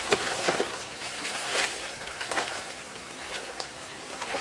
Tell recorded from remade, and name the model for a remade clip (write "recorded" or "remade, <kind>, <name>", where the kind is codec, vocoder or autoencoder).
remade, codec, SNAC